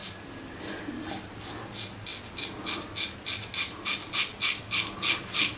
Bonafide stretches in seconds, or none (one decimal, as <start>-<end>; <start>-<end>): 0.0-5.6